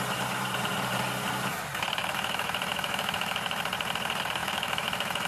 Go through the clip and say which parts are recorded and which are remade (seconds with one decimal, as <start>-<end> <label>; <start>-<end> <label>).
0.0-2.0 recorded; 2.0-3.6 remade; 3.6-4.4 recorded; 4.4-5.3 remade